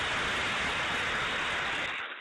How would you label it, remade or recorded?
recorded